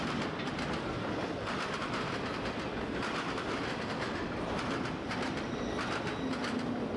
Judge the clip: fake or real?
real